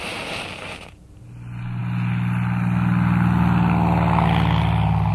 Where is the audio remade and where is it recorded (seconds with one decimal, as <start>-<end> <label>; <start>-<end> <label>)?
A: 0.0-5.1 recorded